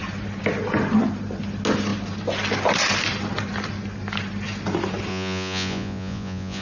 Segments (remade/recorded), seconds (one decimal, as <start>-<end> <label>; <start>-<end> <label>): 0.0-5.1 recorded; 5.1-6.6 remade

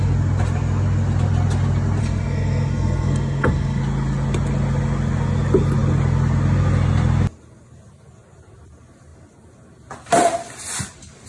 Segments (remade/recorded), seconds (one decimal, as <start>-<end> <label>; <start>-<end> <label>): 0.0-2.0 recorded; 2.0-3.8 remade; 3.8-11.3 recorded